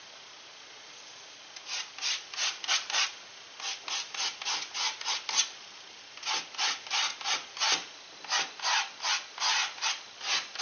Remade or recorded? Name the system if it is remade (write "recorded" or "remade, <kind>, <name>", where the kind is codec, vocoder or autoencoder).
recorded